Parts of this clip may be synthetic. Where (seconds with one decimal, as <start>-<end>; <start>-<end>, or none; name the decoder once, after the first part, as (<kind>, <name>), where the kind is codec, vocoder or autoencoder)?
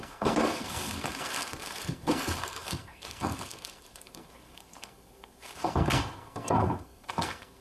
0.0-7.6 (codec, SNAC)